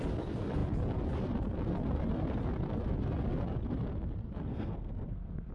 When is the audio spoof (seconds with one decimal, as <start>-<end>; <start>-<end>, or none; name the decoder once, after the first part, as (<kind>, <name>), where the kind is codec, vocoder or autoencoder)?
4.5-5.5 (codec, SNAC)